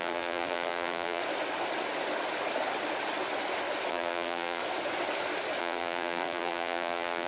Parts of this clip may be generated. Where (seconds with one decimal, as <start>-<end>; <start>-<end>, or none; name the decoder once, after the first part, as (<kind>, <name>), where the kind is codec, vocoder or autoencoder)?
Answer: 0.0-1.2 (vocoder, BigVGAN v2); 3.9-4.6; 5.6-7.3